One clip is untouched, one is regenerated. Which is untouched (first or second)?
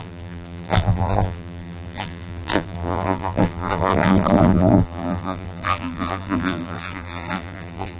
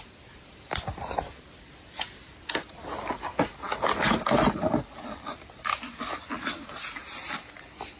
second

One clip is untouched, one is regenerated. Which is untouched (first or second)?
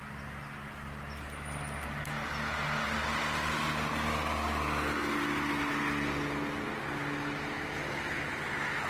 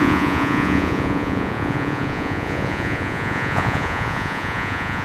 first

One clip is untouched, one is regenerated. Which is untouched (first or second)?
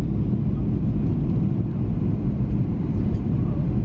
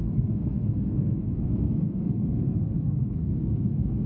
first